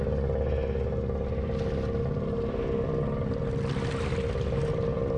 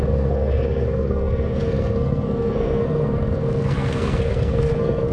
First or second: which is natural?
first